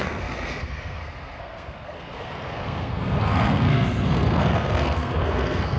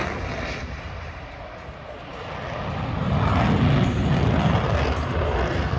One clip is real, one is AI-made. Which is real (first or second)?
second